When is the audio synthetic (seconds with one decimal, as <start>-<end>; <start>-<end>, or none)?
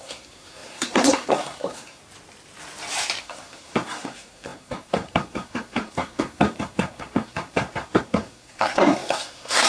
0.0-2.0; 3.2-9.7